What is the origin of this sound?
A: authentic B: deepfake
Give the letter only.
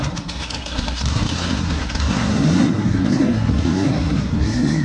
B